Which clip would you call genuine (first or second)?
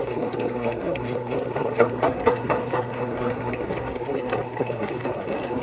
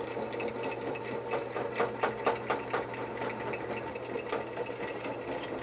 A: second